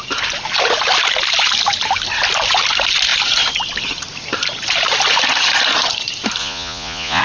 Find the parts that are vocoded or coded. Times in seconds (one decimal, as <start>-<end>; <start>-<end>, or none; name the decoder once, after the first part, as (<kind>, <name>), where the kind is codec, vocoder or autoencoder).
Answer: 6.4-7.2 (vocoder, Vocos)